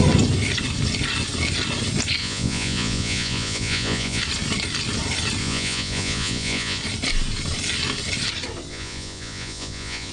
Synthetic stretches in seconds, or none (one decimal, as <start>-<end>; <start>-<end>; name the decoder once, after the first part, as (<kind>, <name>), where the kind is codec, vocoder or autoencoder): 2.2-4.2 (vocoder, Vocos); 5.4-6.8; 8.7-10.1